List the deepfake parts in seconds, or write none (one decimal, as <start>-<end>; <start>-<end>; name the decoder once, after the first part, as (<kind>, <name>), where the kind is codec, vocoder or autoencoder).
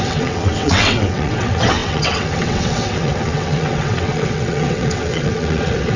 0.0-6.0 (vocoder, WaveNeXt)